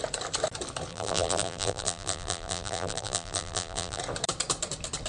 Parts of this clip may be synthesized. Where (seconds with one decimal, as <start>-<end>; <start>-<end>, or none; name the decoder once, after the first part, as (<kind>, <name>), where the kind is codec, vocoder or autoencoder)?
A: 0.9-4.0 (vocoder, BigVGAN v2)